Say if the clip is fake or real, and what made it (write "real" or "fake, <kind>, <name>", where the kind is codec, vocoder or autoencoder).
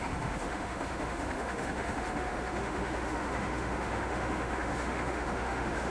fake, autoencoder, DAC-VAE